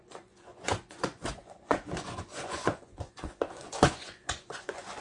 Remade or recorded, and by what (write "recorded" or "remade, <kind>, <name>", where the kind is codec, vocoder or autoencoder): remade, vocoder, Vocos